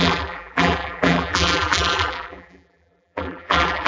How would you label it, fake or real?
fake